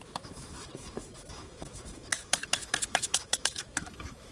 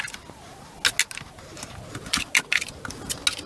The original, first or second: second